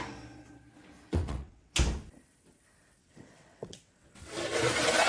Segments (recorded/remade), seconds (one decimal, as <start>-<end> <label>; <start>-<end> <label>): 0.0-1.1 recorded; 1.1-1.7 remade; 1.7-3.0 recorded; 3.0-4.3 remade; 4.3-5.1 recorded